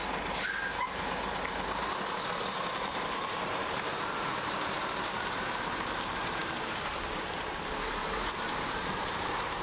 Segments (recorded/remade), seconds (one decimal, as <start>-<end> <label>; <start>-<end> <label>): 0.0-2.8 recorded; 2.8-9.6 remade